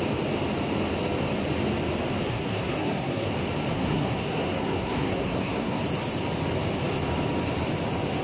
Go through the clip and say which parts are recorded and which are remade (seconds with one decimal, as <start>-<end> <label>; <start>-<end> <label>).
0.0-2.3 recorded; 2.3-3.3 remade; 3.3-3.7 recorded; 3.7-5.8 remade; 5.8-8.2 recorded